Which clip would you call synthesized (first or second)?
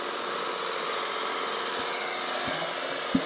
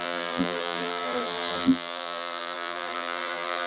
second